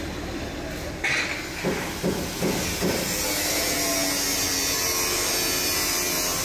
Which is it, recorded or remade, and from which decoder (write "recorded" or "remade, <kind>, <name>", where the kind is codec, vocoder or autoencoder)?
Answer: recorded